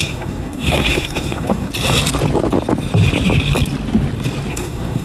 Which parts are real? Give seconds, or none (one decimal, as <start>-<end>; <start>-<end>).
1.7-4.5